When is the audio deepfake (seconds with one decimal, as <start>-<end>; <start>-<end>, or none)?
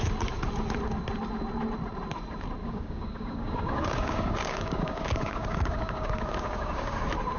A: 2.6-7.0